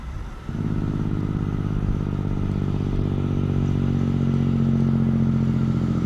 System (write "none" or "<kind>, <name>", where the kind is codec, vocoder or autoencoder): none